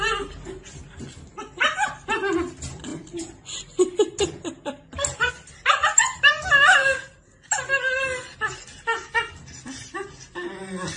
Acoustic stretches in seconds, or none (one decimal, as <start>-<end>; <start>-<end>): 0.0-11.0